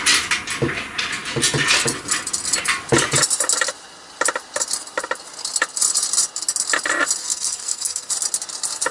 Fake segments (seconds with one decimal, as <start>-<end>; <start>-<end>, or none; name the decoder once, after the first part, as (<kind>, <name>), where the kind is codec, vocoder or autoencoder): 7.2-8.1 (codec, SNAC)